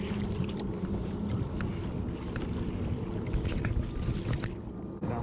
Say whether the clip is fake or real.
real